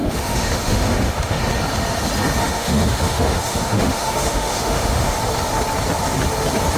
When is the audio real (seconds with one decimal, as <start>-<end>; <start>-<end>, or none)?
1.4-2.4; 5.2-6.8